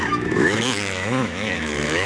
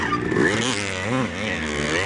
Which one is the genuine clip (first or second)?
second